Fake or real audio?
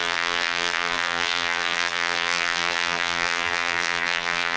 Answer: fake